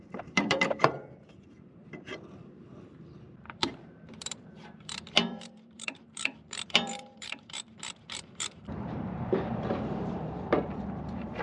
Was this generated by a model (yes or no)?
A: yes